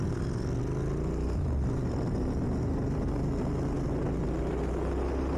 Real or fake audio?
real